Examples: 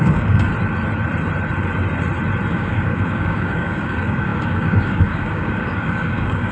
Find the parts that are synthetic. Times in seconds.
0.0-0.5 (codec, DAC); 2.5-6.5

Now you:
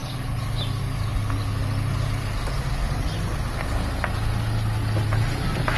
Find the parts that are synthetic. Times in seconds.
none

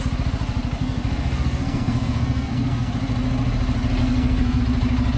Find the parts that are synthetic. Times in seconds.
0.8-2.9 (codec, SNAC); 4.0-4.6

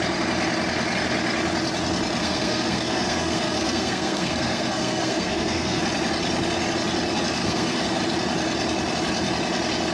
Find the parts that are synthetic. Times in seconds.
2.2-5.8 (codec, SNAC); 7.4-8.0

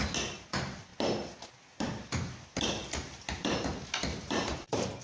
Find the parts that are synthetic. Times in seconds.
4.1-5.0 (vocoder, BigVGAN v2)

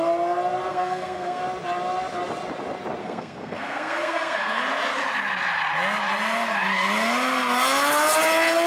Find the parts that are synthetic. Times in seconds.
0.7-1.4 (codec, SNAC); 3.0-4.6

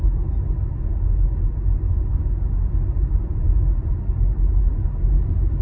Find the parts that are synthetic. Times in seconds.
none